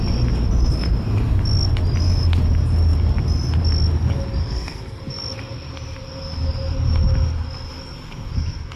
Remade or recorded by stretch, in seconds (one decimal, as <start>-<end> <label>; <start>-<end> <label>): 0.0-4.4 recorded; 4.4-5.0 remade; 5.0-8.8 recorded